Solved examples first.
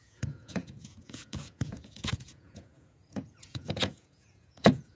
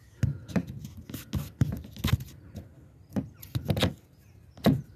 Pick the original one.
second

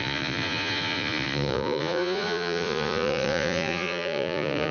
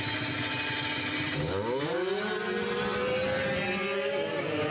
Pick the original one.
second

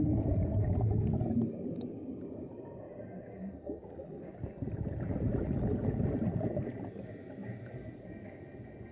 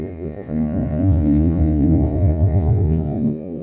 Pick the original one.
first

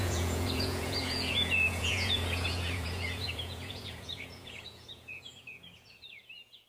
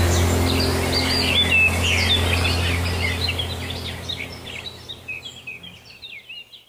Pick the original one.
second